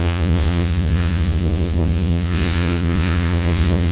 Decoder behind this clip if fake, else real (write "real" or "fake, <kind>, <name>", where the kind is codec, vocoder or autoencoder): fake, vocoder, Vocos